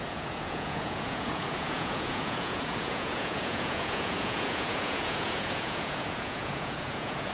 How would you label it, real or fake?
fake